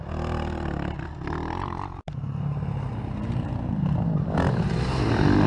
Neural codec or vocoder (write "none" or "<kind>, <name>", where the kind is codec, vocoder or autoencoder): none